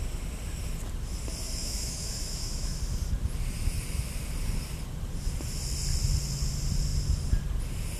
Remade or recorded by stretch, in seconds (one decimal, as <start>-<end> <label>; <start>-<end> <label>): 0.0-1.6 recorded; 1.6-2.8 remade; 2.8-8.0 recorded